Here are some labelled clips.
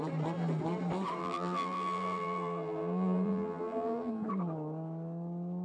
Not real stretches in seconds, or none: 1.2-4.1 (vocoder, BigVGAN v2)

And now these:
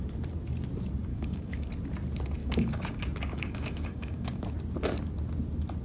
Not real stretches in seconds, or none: 1.1-1.7 (codec, DAC); 2.4-4.4

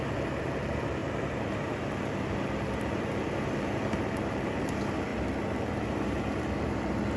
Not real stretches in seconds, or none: 0.0-5.1 (vocoder, BigVGAN v2); 5.6-7.2